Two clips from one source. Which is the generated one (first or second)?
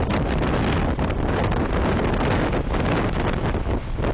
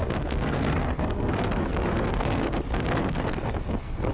second